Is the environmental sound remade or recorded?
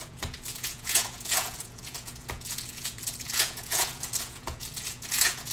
remade